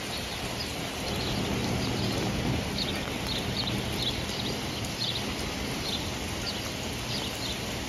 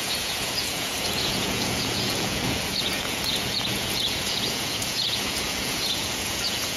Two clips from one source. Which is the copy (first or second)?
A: second